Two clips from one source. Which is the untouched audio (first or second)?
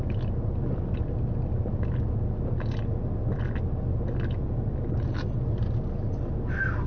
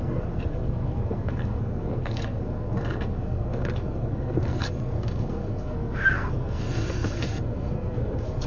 first